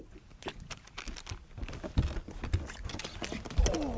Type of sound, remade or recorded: recorded